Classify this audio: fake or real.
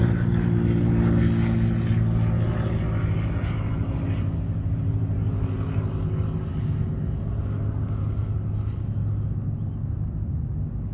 real